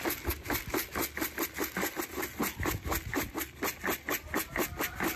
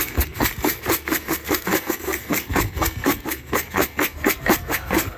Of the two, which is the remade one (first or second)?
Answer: second